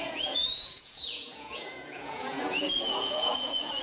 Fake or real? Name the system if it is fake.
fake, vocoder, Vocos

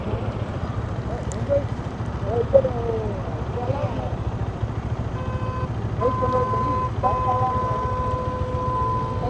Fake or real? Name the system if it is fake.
real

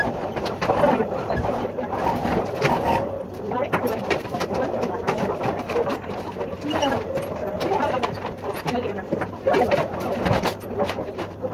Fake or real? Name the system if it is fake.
fake, vocoder, BigVGAN v2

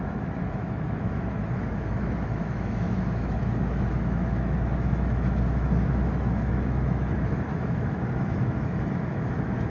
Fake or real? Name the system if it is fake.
fake, autoencoder, DAC-VAE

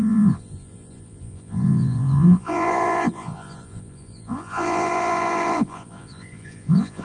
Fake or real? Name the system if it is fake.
fake, vocoder, Vocos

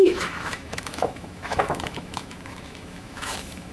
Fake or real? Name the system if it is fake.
fake, autoencoder, DAC-VAE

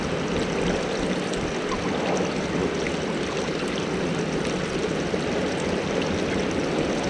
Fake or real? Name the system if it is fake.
real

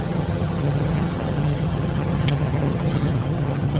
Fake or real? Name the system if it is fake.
fake, vocoder, HiFi-GAN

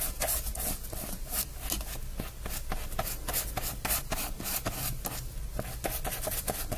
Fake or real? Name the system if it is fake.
real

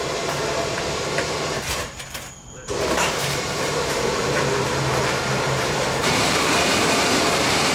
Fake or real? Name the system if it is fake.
fake, vocoder, BigVGAN v2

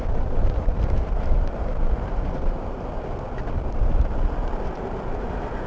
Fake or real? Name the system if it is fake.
fake, vocoder, BigVGAN v2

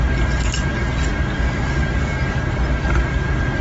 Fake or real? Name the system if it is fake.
real